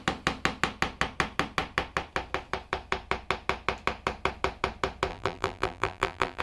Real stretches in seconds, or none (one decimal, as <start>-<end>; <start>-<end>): 0.0-5.1